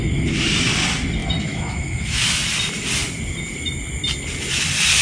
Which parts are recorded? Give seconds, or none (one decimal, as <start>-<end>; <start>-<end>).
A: 0.0-1.2; 2.2-5.0